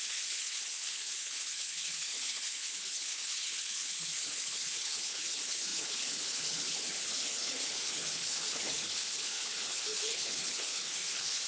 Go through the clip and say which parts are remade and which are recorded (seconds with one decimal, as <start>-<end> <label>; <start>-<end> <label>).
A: 0.0-11.5 remade